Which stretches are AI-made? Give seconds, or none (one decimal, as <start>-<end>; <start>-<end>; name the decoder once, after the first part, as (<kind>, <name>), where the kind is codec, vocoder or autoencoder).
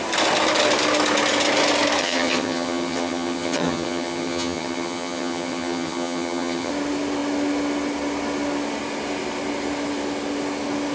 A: 2.0-6.7 (vocoder, HiFi-GAN)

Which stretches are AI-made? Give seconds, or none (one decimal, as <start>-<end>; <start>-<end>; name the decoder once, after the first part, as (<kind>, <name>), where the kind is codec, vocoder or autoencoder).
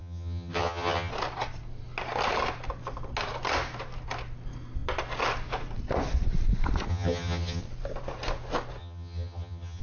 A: 0.0-1.1 (vocoder, HiFi-GAN); 6.9-7.6; 8.8-9.8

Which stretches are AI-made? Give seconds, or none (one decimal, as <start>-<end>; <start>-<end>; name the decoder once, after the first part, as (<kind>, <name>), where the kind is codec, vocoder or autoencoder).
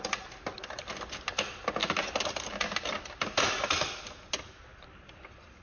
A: none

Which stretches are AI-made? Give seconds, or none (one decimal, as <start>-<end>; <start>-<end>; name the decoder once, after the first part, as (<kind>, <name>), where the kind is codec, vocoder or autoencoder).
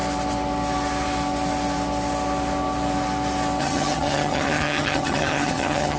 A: 3.6-6.0 (vocoder, HiFi-GAN)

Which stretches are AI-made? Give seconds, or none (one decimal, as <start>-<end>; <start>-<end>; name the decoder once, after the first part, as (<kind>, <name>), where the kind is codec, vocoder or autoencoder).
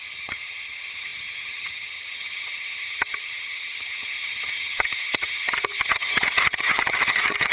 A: 0.0-7.5 (vocoder, HiFi-GAN)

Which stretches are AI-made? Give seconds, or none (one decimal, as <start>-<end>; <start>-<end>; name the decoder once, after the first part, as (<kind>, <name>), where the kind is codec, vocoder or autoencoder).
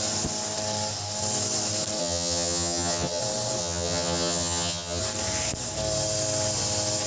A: 2.0-3.2 (vocoder, HiFi-GAN); 3.6-5.0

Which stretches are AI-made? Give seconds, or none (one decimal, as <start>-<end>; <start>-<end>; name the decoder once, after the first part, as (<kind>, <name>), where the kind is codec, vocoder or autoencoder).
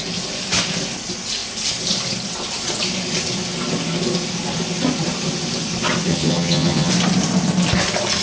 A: 6.1-6.9 (vocoder, HiFi-GAN)